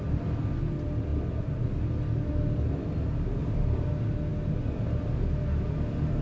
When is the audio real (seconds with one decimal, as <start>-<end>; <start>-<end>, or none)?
0.0-1.1; 1.7-3.4; 3.9-6.2